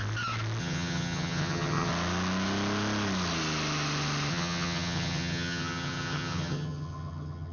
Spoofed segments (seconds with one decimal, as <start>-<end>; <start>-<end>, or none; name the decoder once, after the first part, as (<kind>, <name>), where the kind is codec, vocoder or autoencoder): 0.6-1.9 (vocoder, HiFi-GAN); 4.3-7.5